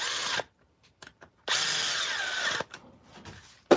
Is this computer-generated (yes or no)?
no